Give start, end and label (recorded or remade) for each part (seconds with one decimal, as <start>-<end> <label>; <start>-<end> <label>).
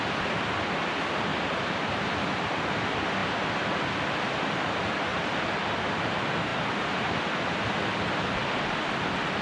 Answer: 0.0-1.3 recorded; 1.3-2.1 remade; 2.1-3.2 recorded; 3.2-3.8 remade; 3.8-6.5 recorded; 6.5-7.2 remade; 7.2-9.4 recorded